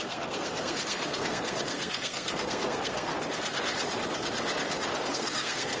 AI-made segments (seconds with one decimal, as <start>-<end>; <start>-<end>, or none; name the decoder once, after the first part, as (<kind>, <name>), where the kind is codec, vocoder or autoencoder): 0.0-3.1 (codec, SNAC); 5.1-5.8